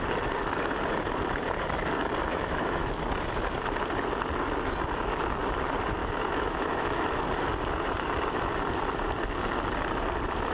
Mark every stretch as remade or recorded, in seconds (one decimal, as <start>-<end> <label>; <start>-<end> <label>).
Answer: 0.0-2.3 recorded; 2.3-2.9 remade; 2.9-6.0 recorded; 6.0-7.2 remade; 7.2-10.5 recorded